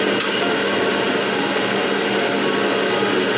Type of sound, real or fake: real